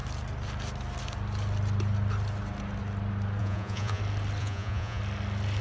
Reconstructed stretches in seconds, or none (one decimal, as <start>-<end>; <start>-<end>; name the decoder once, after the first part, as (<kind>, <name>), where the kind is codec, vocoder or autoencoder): 3.4-4.0 (vocoder, Vocos); 4.4-5.0